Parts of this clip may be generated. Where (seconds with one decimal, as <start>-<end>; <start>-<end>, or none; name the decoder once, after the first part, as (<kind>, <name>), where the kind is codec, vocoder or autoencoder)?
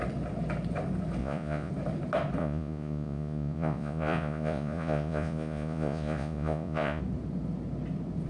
1.2-1.7 (vocoder, Vocos); 2.4-7.0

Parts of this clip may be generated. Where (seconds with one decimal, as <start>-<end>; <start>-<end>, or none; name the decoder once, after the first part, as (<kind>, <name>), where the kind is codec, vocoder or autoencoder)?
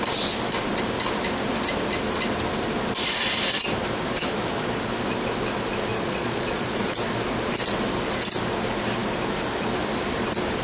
5.9-7.0 (vocoder, Vocos)